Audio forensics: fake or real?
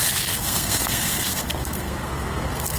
fake